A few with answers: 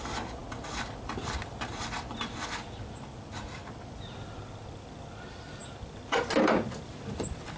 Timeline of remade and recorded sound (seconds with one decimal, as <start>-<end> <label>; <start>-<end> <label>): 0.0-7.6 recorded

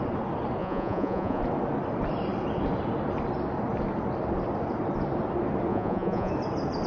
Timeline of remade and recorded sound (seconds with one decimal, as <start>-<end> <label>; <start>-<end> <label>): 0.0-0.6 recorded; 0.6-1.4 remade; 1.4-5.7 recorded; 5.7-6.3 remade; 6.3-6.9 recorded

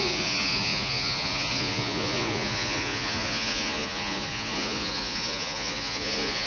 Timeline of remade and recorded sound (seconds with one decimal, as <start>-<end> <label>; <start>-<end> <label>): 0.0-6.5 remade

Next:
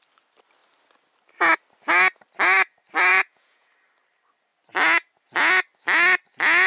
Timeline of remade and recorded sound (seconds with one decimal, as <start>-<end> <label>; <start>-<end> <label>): 0.0-3.1 recorded; 3.1-3.7 remade; 3.7-6.7 recorded

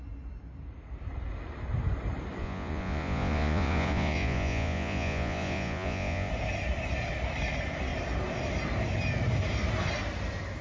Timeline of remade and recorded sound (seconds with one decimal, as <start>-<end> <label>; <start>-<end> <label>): 0.0-2.4 recorded; 2.4-6.3 remade; 6.3-10.6 recorded

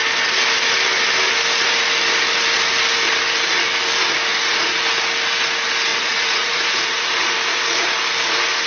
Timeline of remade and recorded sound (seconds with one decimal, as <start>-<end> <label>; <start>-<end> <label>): 0.0-4.3 recorded; 4.3-4.8 remade; 4.8-5.9 recorded; 5.9-7.1 remade; 7.1-8.7 recorded